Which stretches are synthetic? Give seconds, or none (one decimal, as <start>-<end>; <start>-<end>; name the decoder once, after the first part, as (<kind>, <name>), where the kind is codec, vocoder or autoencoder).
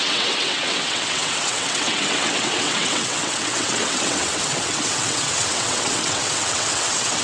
0.0-7.2 (vocoder, WaveNeXt)